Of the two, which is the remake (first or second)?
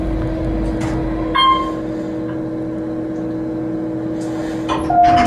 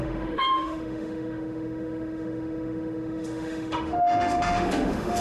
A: second